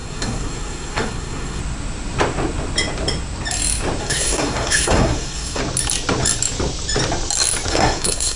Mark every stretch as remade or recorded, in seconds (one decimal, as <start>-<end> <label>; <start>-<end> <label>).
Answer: 0.0-1.6 remade; 1.6-4.0 recorded; 4.0-5.6 remade; 5.6-7.7 recorded; 7.7-8.4 remade